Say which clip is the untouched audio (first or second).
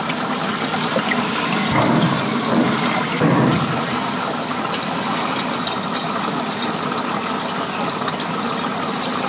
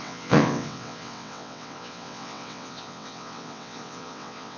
first